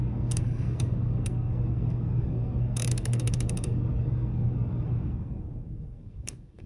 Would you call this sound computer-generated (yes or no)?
yes